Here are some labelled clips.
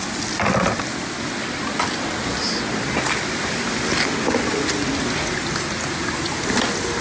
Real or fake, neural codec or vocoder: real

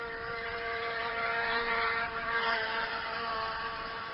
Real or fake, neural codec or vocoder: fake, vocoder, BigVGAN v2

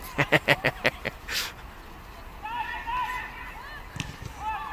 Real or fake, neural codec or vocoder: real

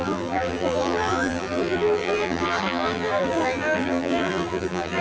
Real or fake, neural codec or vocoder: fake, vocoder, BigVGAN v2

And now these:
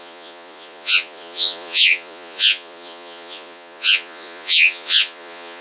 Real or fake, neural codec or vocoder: fake, vocoder, Vocos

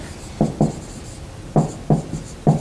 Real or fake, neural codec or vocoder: real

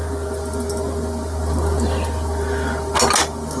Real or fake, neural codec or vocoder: real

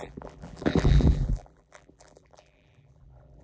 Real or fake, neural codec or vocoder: fake, vocoder, BigVGAN v2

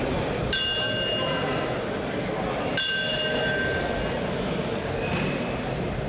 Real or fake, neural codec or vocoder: real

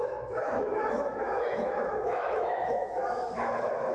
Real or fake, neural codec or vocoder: fake, autoencoder, DAC-VAE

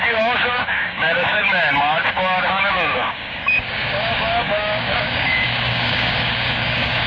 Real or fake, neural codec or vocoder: fake, codec, DAC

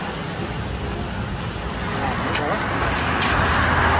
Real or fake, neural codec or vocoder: real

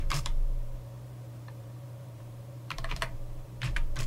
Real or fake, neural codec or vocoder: fake, vocoder, BigVGAN v2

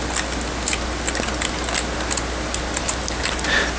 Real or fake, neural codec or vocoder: real